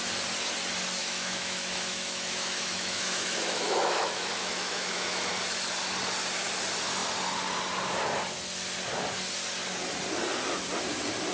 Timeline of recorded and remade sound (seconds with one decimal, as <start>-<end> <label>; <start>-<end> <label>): 0.0-1.0 recorded; 1.0-5.3 remade; 5.3-11.3 recorded